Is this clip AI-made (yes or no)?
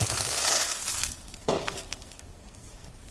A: yes